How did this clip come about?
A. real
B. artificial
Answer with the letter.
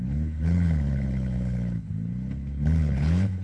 B